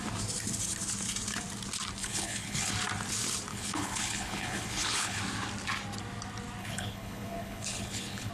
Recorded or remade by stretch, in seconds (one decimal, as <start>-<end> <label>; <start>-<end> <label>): 0.0-2.0 recorded; 2.0-2.7 remade; 2.7-3.5 recorded; 3.5-5.2 remade; 5.2-6.6 recorded; 6.6-8.3 remade